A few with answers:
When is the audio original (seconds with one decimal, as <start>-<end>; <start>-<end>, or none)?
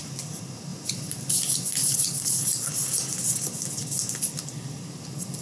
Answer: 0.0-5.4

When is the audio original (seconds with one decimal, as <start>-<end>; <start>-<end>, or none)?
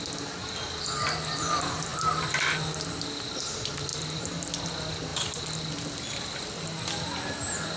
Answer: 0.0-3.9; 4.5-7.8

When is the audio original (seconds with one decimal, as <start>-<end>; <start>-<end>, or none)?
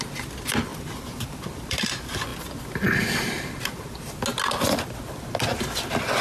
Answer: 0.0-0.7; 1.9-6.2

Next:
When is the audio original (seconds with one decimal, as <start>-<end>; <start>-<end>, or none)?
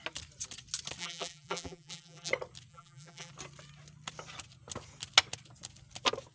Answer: 0.0-1.0; 2.3-2.7; 3.3-6.3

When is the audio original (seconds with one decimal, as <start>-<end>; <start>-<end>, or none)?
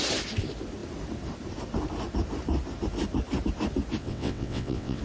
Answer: 0.0-4.0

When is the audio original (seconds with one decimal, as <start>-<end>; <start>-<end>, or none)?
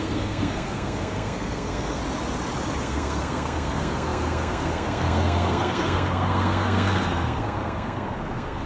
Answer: 2.0-2.8